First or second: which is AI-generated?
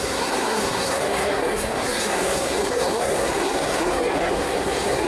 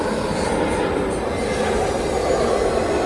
first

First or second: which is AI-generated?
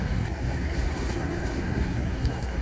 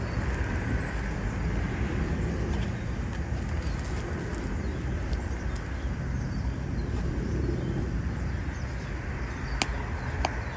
first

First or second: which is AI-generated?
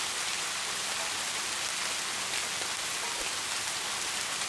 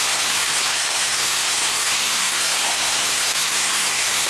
second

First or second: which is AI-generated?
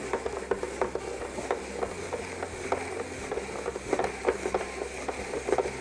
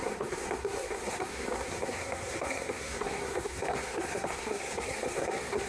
second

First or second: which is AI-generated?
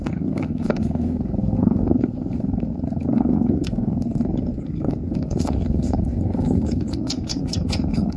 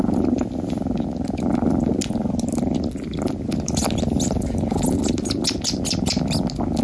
first